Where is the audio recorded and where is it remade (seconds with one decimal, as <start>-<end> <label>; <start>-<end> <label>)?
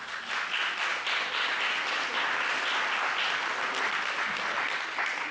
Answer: 0.0-5.3 recorded